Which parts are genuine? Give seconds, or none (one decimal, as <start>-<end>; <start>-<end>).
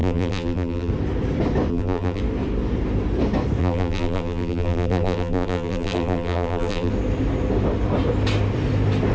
0.9-1.7; 2.2-3.6; 6.9-9.1